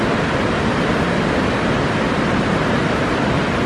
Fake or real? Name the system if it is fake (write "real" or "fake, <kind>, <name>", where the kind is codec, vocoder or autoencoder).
real